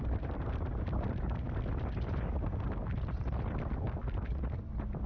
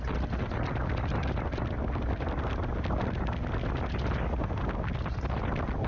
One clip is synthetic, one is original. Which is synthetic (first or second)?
first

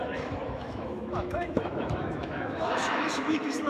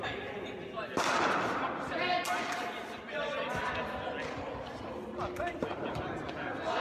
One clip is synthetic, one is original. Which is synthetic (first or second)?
first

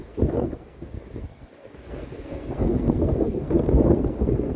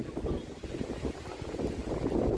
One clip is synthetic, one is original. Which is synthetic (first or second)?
first